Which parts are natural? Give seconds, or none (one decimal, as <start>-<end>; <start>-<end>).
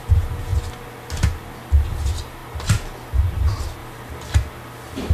0.0-3.8; 4.3-5.1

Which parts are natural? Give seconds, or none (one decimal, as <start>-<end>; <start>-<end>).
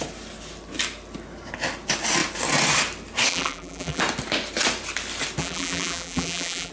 0.0-3.3; 4.0-5.4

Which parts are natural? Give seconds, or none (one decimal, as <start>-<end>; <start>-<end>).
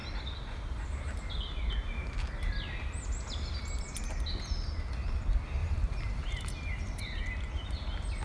0.0-5.6; 7.2-8.2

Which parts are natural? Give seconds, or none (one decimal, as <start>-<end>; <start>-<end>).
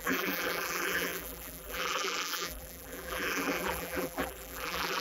none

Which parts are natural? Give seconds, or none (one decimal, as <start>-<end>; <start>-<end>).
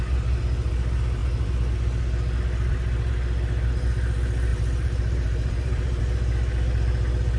0.0-4.5; 6.0-7.4